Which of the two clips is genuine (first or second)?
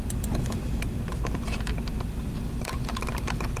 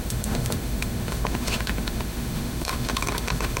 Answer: first